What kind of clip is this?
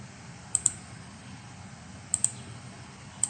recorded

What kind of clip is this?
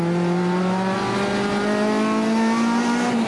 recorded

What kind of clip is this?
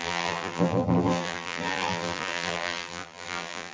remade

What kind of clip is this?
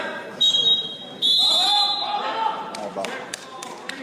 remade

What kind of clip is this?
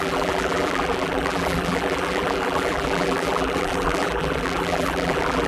remade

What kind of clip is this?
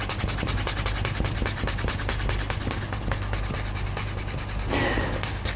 recorded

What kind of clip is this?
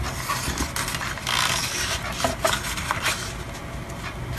recorded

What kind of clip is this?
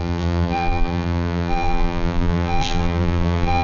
remade